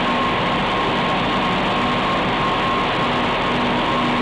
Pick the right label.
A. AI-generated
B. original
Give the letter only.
B